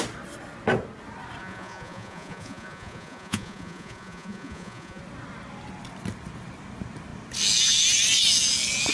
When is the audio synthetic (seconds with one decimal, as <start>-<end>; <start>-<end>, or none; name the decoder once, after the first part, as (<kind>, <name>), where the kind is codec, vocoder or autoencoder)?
1.4-5.0 (vocoder, Vocos)